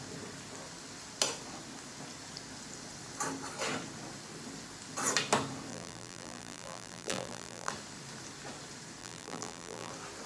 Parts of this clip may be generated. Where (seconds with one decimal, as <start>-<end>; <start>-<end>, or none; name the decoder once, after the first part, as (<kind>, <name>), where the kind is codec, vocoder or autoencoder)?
5.7-7.7 (vocoder, BigVGAN v2); 9.0-9.9